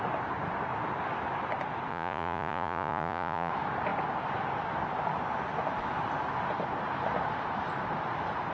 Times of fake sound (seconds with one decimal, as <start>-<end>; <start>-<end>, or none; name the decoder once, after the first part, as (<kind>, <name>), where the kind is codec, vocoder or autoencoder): 1.9-3.5 (vocoder, Vocos)